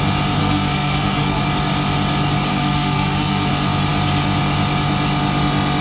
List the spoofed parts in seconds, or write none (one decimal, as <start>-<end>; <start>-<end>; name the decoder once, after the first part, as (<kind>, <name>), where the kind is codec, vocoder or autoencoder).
0.4-1.4 (codec, SNAC); 2.5-3.5